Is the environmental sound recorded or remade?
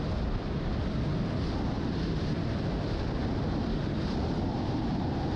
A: recorded